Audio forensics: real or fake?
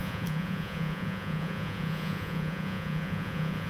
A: fake